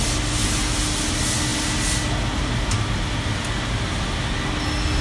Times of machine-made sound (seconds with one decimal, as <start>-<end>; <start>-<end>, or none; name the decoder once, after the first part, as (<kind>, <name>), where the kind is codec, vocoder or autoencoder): none